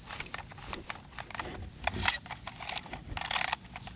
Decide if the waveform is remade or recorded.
recorded